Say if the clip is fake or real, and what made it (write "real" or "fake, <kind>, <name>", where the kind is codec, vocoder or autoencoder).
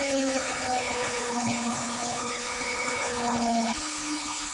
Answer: fake, codec, HILCodec